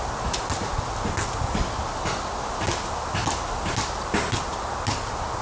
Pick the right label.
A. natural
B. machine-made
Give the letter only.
A